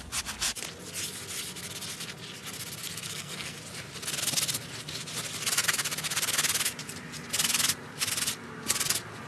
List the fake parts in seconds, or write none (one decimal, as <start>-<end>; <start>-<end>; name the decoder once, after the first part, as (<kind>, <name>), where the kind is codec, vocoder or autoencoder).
2.9-3.6 (codec, SNAC)